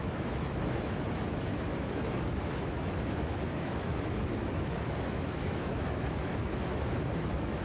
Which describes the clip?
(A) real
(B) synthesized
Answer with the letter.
B